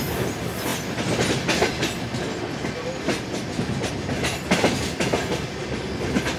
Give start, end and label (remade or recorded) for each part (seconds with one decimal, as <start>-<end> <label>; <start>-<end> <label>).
0.0-6.4 recorded